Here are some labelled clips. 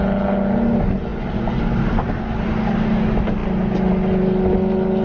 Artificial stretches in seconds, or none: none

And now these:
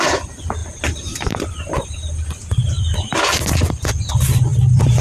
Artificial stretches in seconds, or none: 0.6-3.2 (vocoder, BigVGAN v2)

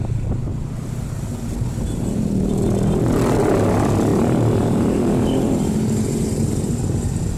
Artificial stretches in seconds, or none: 4.1-6.8 (vocoder, BigVGAN v2)

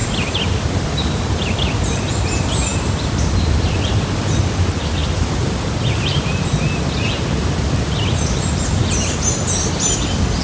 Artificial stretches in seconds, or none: 0.0-2.0 (vocoder, BigVGAN v2)

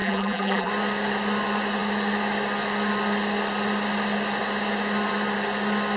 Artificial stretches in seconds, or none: 0.0-0.7 (vocoder, BigVGAN v2)

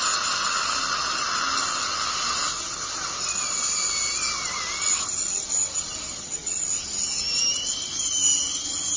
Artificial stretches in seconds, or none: none

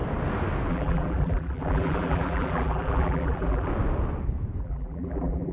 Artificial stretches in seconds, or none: 0.7-3.7 (vocoder, BigVGAN v2); 4.6-5.5

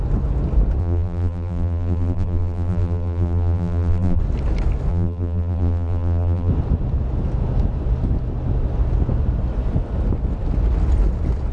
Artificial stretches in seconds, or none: 0.8-4.2 (vocoder, BigVGAN v2); 4.9-6.5